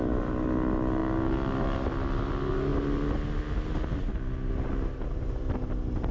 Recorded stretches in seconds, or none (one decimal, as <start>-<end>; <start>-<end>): 0.0-6.1